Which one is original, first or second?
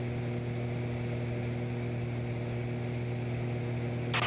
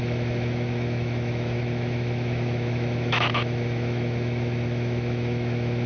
first